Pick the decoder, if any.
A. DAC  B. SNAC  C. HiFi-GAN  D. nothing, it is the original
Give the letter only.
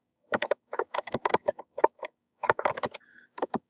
A